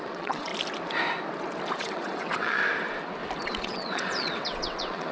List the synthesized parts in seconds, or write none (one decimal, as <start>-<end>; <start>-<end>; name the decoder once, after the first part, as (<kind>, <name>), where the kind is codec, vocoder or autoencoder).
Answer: 0.0-0.5 (vocoder, WaveNeXt); 1.8-2.6; 3.4-5.1